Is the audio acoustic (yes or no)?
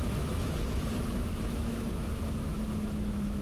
no